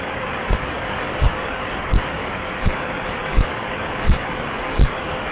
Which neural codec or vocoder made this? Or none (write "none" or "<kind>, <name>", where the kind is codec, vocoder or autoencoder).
codec, DAC